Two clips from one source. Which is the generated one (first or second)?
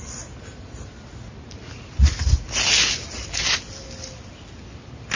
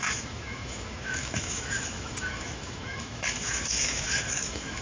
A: second